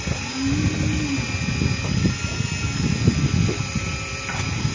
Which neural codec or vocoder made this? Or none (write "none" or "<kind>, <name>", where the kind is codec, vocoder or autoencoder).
none